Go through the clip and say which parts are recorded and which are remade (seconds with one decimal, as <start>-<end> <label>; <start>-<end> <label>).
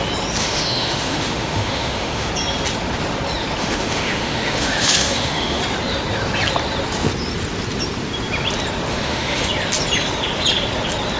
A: 0.0-0.4 recorded; 0.4-2.3 remade; 2.3-3.6 recorded; 3.6-5.6 remade; 5.6-8.9 recorded; 8.9-9.5 remade; 9.5-11.2 recorded